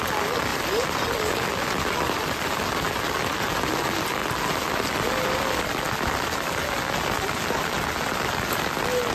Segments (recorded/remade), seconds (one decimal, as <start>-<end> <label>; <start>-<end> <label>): 0.0-9.1 recorded